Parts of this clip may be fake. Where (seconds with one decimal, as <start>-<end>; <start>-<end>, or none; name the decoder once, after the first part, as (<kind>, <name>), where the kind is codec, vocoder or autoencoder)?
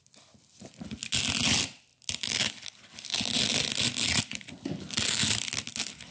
none